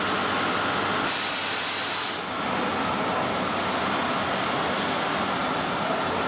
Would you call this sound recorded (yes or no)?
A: yes